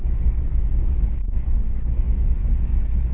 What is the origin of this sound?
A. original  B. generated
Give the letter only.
B